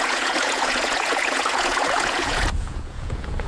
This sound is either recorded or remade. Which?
remade